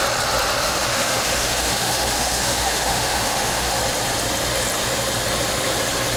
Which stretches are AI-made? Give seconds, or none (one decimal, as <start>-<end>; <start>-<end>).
0.6-3.8